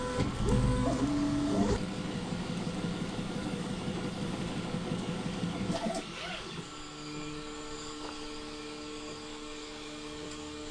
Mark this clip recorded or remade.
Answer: remade